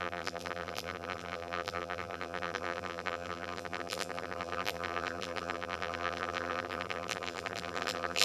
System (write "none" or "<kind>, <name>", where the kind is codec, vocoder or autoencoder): vocoder, BigVGAN v2